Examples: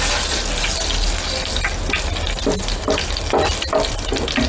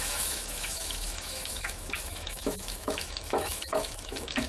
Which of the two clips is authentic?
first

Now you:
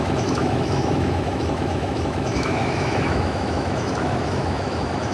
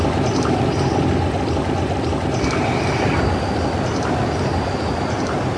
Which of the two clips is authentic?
second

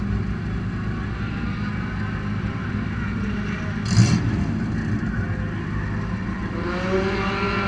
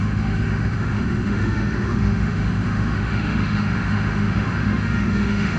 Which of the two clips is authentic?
first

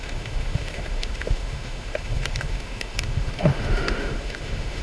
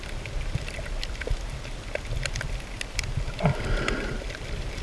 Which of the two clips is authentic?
second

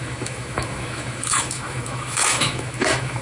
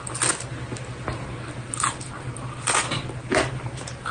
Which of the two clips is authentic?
second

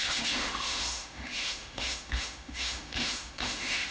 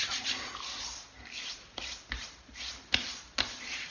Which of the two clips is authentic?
second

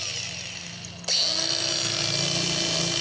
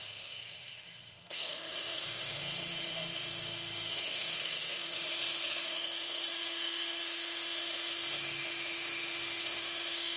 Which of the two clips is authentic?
first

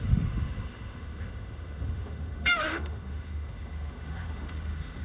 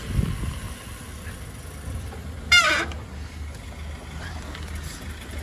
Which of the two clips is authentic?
second